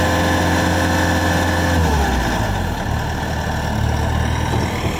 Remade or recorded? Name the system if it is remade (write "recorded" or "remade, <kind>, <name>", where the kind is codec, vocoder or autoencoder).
recorded